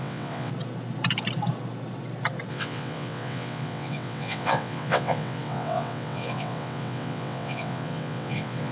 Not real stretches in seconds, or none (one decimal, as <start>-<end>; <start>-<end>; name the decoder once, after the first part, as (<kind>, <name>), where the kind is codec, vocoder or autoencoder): 0.0-0.5 (vocoder, WaveNeXt); 2.5-8.7